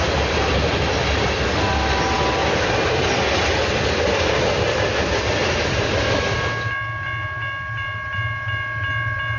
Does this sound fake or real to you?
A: real